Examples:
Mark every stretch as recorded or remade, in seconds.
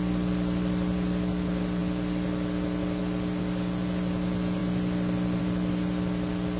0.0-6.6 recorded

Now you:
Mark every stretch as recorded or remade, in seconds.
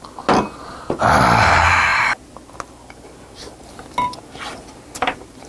0.0-5.5 recorded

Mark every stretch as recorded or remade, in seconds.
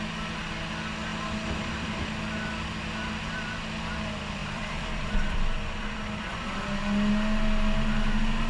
0.0-4.4 recorded; 4.4-6.2 remade; 6.2-8.5 recorded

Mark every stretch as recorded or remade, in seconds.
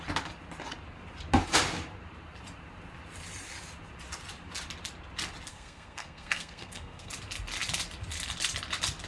0.0-5.5 recorded; 5.5-7.1 remade; 7.1-9.1 recorded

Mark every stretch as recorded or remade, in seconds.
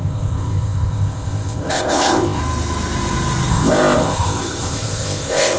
0.0-2.4 remade; 2.4-3.5 recorded; 3.5-5.6 remade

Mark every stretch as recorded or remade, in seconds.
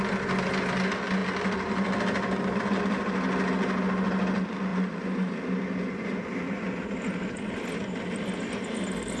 0.0-9.2 recorded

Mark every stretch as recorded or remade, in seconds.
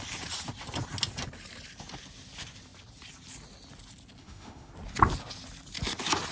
0.0-4.2 recorded; 4.2-4.7 remade; 4.7-6.3 recorded